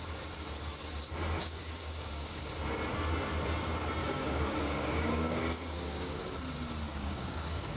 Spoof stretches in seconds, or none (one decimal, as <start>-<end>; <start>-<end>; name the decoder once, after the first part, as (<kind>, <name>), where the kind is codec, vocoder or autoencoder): 1.4-2.4 (codec, DAC); 4.0-6.2; 6.9-7.8